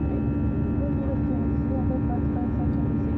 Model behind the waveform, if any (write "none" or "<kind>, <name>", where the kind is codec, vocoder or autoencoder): none